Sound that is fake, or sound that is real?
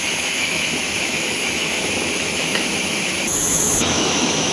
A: fake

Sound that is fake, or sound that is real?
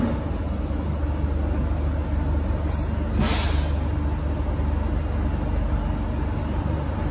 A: real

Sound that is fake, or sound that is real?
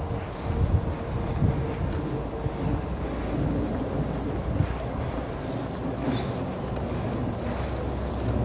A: real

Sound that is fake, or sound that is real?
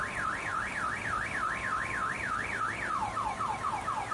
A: real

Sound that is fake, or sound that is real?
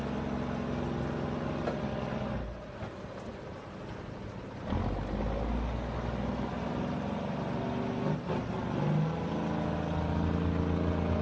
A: real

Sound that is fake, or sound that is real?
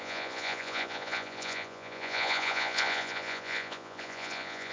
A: fake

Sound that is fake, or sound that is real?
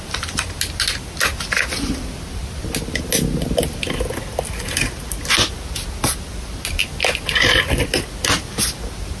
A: real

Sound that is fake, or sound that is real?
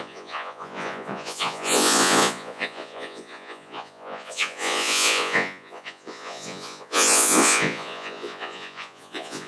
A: fake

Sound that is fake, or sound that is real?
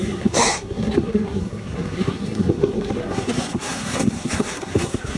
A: fake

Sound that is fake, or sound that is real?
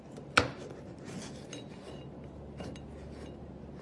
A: real